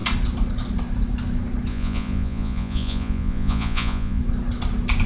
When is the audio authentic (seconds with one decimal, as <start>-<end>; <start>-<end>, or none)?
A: 0.0-1.7; 4.2-5.1